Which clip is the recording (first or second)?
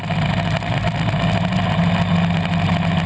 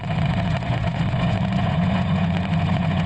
first